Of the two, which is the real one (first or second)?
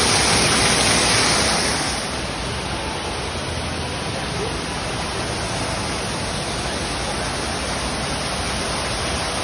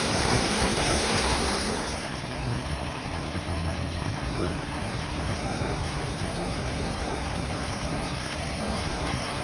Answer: first